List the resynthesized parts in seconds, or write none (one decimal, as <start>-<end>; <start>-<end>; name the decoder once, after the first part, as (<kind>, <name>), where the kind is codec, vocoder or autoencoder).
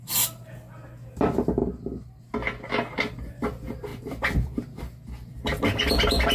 3.9-4.8 (vocoder, BigVGAN v2)